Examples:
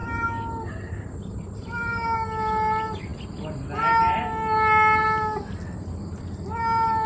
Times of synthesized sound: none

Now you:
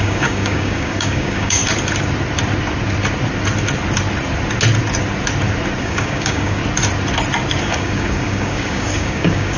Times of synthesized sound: 0.0-1.6; 5.8-6.6; 7.6-9.6